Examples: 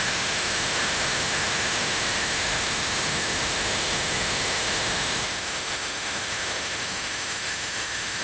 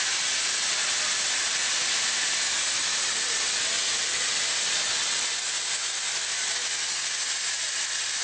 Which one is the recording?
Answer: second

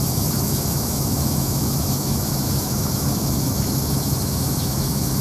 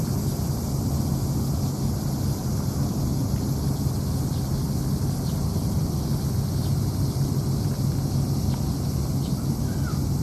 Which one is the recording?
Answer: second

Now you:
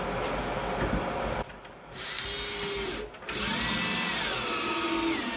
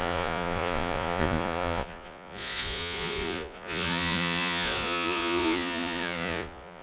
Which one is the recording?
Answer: first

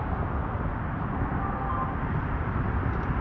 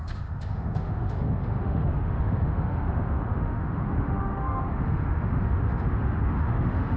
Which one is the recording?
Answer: first